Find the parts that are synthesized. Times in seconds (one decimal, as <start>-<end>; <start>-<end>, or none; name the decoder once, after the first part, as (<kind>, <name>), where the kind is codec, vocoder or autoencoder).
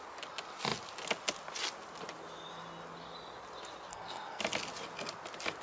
3.9-4.4 (codec, SNAC)